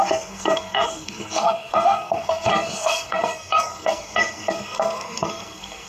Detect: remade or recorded remade